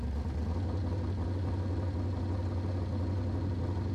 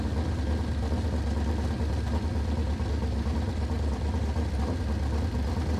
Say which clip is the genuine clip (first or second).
first